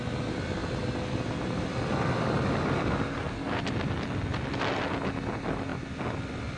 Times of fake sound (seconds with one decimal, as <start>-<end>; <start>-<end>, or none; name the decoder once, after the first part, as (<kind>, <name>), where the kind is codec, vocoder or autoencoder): none

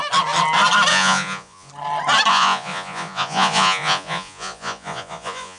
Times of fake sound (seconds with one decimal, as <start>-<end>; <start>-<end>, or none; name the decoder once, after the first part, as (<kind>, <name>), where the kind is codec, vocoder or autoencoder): 0.9-1.7 (vocoder, Vocos); 2.3-5.6